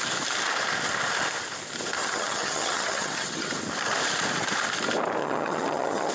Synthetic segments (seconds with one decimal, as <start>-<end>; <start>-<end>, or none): 2.0-3.5; 5.2-6.1